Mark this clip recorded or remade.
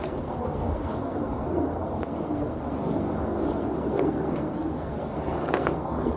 remade